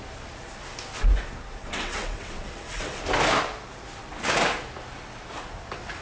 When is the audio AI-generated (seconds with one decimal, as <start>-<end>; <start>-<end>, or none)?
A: 1.6-3.0